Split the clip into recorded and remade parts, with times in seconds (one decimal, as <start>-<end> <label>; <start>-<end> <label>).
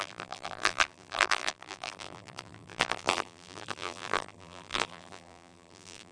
0.0-6.1 remade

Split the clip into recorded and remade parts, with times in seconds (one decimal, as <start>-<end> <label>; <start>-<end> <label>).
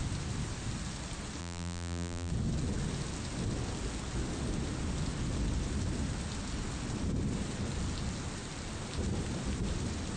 0.0-1.4 recorded; 1.4-2.3 remade; 2.3-10.2 recorded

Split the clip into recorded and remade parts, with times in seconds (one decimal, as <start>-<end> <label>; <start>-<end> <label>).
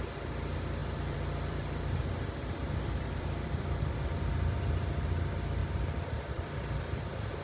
0.0-0.8 recorded; 0.8-3.8 remade; 3.8-5.6 recorded; 5.6-6.8 remade; 6.8-7.4 recorded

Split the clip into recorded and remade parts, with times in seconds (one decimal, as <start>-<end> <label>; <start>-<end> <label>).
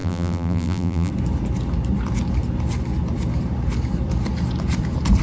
0.0-1.1 remade; 1.1-5.2 recorded